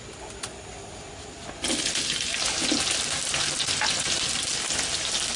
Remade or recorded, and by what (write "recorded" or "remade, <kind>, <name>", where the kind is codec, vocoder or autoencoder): recorded